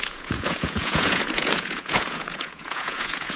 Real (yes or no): no